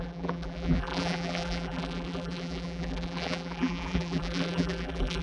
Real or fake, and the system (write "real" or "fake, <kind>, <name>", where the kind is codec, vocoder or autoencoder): fake, vocoder, BigVGAN v2